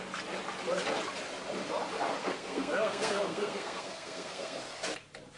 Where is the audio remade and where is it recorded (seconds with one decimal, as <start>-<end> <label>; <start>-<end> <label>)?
0.0-2.2 recorded; 2.2-4.6 remade; 4.6-5.4 recorded